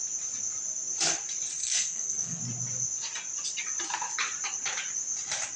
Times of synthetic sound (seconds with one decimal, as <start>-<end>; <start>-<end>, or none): 1.6-2.4